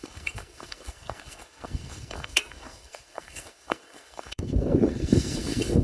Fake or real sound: fake